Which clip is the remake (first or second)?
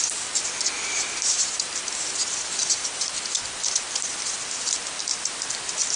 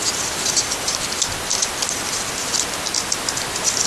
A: first